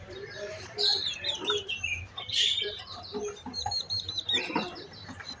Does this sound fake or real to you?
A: fake